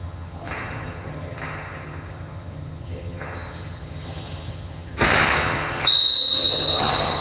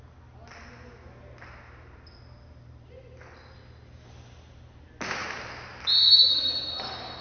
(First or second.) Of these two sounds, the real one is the second